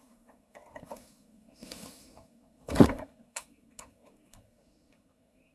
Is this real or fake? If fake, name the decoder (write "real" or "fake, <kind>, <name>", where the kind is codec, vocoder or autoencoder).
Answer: fake, codec, SNAC